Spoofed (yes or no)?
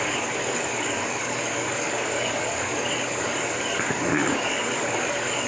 yes